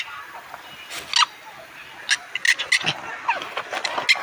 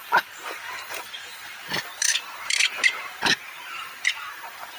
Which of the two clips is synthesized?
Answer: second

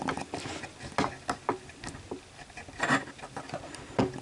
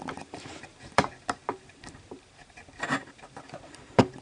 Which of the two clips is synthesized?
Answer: second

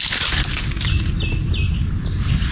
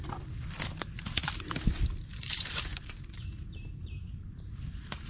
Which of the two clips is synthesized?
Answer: second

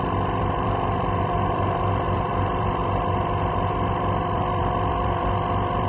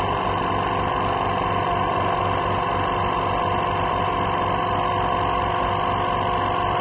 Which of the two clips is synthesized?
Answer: first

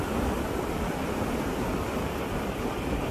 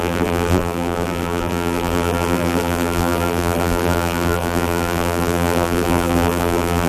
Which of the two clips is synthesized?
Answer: second